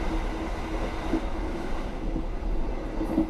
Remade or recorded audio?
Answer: recorded